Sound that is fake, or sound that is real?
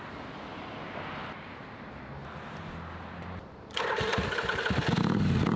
real